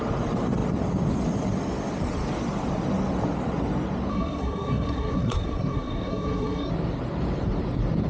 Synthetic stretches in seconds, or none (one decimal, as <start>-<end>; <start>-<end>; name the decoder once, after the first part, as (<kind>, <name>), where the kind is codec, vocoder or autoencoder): 4.1-6.7 (codec, SNAC)